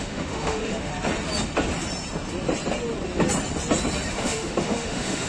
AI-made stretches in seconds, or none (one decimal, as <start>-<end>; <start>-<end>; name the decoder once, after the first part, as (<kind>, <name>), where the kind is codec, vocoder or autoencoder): 0.0-0.9 (autoencoder, DAC-VAE); 4.1-5.3